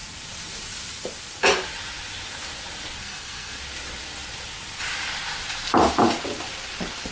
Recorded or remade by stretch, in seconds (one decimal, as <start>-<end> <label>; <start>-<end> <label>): 0.0-3.0 recorded; 3.0-3.6 remade; 3.6-7.1 recorded